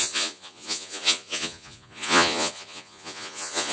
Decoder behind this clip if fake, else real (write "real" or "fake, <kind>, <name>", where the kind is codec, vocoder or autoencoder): fake, vocoder, Vocos